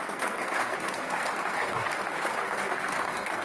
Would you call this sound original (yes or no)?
no